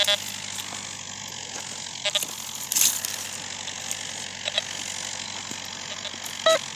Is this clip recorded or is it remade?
recorded